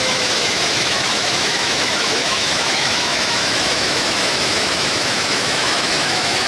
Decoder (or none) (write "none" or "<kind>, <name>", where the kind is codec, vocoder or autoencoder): autoencoder, DAC-VAE